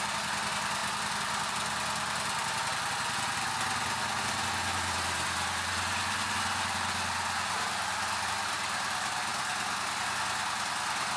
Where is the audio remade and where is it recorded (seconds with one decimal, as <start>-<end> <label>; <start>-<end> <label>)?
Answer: 0.0-11.2 recorded